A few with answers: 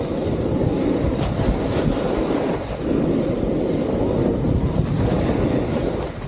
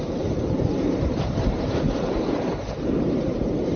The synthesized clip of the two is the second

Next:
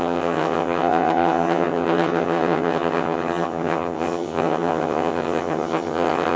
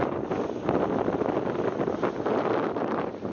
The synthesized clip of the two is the first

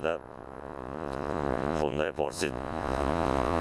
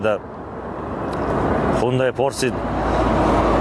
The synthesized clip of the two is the first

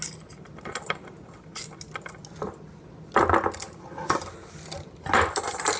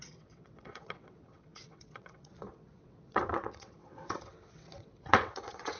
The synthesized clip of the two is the second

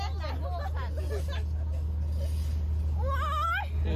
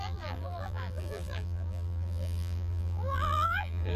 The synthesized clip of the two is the second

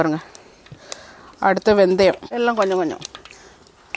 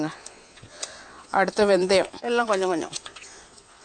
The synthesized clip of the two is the second